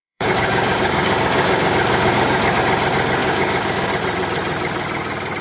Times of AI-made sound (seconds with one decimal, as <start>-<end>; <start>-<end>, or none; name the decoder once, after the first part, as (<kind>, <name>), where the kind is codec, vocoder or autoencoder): 0.0-2.6 (codec, DAC); 3.2-3.9